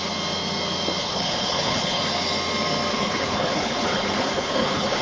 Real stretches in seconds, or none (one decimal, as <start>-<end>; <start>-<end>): 0.0-1.0; 2.0-2.9